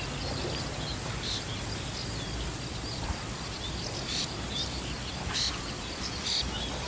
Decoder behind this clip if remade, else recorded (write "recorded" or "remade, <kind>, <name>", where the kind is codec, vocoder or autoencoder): recorded